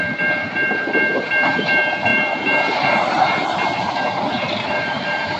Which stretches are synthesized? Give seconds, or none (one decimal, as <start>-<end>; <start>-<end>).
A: 0.0-5.4